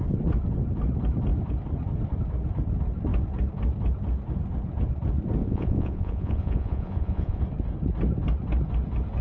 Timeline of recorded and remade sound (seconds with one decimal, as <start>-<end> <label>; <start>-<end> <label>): 0.0-5.4 recorded; 5.4-7.4 remade; 7.4-9.2 recorded